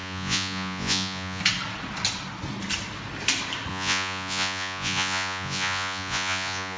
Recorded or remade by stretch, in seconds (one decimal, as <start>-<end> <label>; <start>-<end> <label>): 0.0-1.4 remade; 1.4-3.7 recorded; 3.7-6.8 remade